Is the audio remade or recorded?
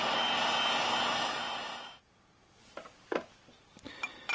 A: recorded